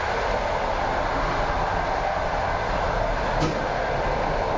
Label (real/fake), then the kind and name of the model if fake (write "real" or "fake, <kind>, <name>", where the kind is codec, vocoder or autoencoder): real